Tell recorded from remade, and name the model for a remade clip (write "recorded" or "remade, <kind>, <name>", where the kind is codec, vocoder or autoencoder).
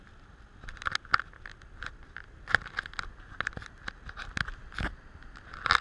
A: recorded